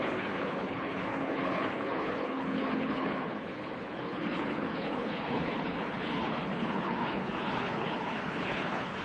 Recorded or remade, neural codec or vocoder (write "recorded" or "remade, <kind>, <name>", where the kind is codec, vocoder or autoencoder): remade, codec, HILCodec